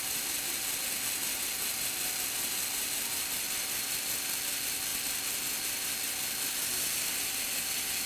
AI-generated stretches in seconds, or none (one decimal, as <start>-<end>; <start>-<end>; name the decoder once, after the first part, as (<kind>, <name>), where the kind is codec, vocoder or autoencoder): none